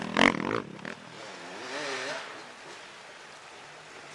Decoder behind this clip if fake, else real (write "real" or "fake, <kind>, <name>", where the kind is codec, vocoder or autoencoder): real